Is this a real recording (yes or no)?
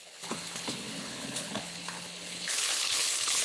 no